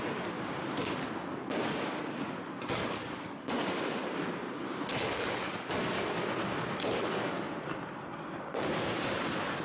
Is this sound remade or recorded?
recorded